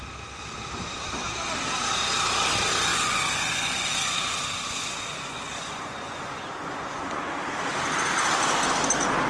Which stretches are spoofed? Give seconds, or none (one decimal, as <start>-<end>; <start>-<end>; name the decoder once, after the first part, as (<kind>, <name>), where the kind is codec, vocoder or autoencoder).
2.9-7.3 (vocoder, Vocos)